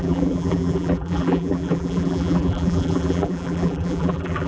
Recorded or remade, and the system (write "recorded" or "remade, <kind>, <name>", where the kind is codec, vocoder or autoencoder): remade, vocoder, BigVGAN v2